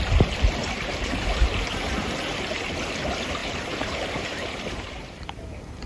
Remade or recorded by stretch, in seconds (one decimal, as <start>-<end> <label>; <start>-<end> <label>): 0.0-0.6 recorded; 0.6-2.6 remade; 2.6-3.4 recorded; 3.4-5.4 remade; 5.4-5.9 recorded